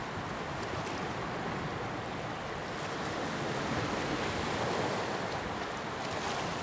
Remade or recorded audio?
recorded